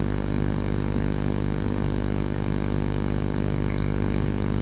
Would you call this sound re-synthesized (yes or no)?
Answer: yes